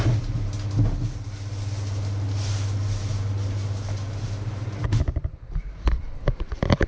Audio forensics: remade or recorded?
recorded